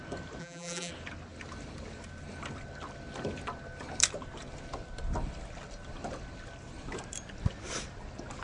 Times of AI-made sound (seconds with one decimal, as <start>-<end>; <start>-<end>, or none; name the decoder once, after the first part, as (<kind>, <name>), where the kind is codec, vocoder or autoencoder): 0.4-0.9 (vocoder, BigVGAN v2)